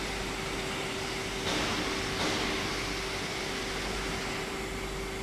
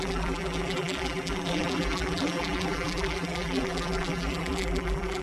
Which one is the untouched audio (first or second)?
first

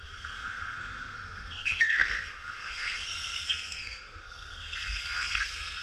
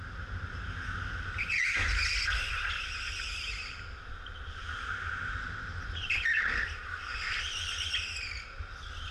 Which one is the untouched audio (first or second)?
second